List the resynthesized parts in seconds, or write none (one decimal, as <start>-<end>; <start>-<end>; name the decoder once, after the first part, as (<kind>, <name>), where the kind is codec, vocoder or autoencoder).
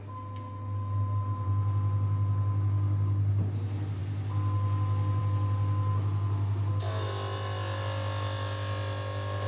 none